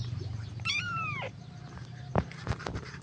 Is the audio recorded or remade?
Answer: remade